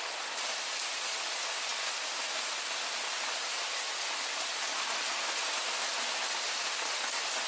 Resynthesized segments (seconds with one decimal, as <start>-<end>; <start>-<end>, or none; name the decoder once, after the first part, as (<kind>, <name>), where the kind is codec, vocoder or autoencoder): none